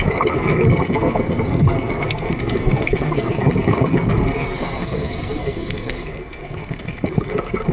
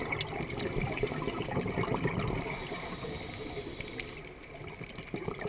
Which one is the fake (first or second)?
first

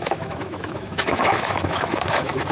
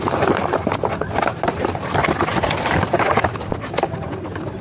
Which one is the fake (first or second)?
first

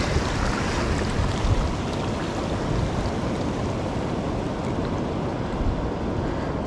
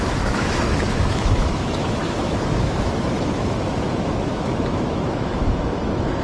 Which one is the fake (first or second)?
second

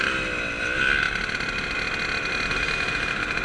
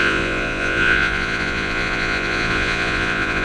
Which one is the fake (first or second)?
second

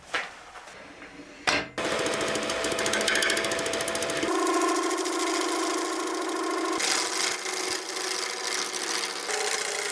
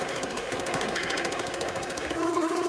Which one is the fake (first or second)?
second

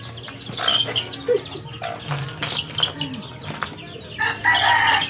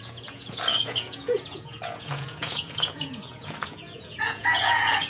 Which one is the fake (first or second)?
second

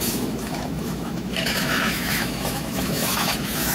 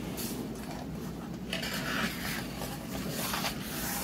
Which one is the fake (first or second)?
first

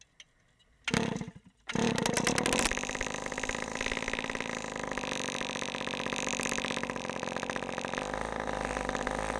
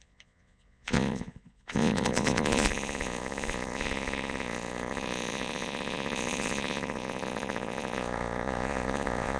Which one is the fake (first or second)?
second